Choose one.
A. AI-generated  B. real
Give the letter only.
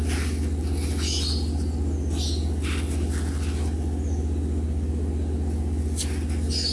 B